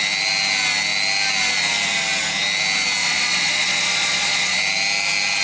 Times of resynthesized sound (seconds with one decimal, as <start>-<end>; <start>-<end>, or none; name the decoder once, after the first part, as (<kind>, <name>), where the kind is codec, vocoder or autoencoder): 3.0-4.6 (vocoder, Vocos)

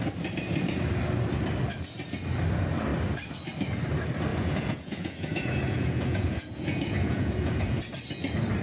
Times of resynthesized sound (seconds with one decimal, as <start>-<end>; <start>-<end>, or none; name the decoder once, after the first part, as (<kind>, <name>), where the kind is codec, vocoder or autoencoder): 4.3-7.8 (vocoder, Vocos)

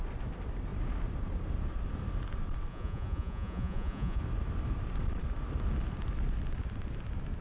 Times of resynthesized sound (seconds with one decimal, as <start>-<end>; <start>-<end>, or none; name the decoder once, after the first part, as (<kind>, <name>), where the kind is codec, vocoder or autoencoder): 2.7-4.2 (vocoder, Vocos)